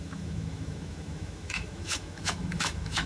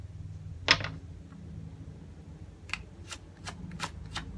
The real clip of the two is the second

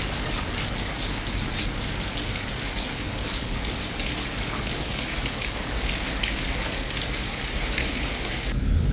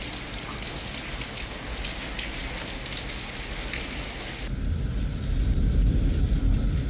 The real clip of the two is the second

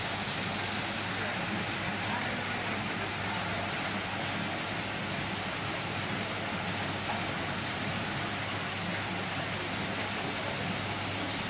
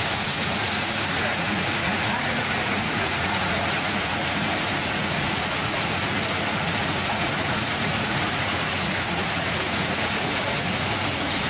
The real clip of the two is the first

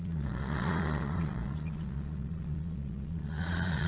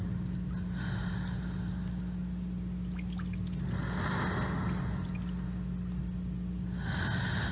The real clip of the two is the second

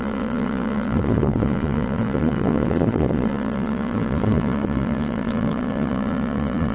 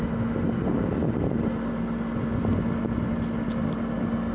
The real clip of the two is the second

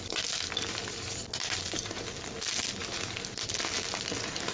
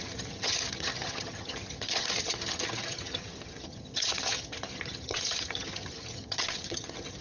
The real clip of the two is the first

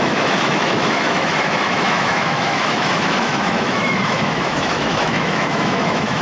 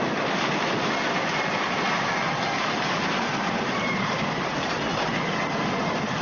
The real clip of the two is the second